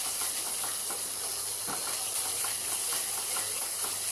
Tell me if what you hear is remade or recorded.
recorded